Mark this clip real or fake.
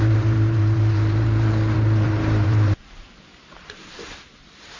fake